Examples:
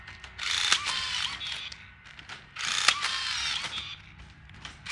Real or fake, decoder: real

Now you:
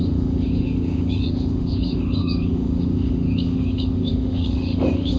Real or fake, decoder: fake, autoencoder, DAC-VAE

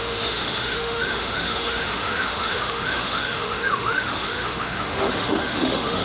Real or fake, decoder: fake, autoencoder, DAC-VAE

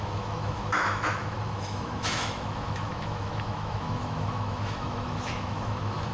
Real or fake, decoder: fake, autoencoder, DAC-VAE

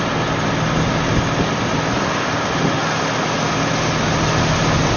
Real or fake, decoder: real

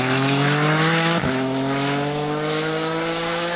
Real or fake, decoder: fake, autoencoder, DAC-VAE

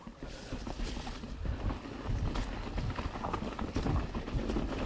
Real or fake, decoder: real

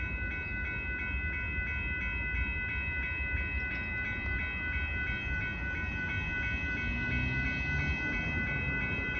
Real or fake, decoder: real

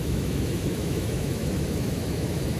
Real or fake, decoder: fake, autoencoder, DAC-VAE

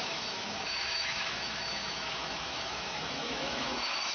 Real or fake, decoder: fake, autoencoder, DAC-VAE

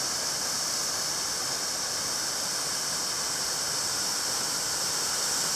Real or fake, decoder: real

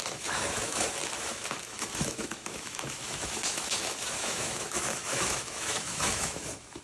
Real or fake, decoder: fake, autoencoder, DAC-VAE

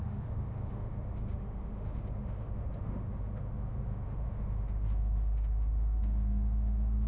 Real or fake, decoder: fake, autoencoder, DAC-VAE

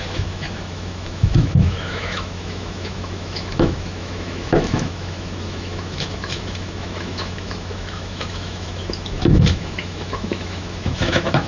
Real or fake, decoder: fake, autoencoder, DAC-VAE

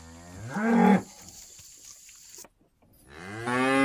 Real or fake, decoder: real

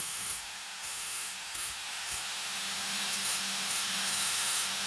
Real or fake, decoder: fake, autoencoder, DAC-VAE